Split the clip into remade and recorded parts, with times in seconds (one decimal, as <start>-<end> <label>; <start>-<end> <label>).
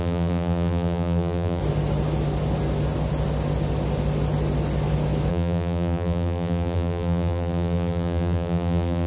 0.0-1.6 remade; 1.6-5.3 recorded; 5.3-9.1 remade